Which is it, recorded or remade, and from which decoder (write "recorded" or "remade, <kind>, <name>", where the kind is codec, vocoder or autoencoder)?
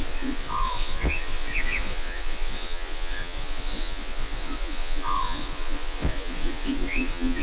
remade, vocoder, Vocos